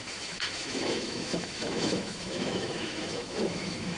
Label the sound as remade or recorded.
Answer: remade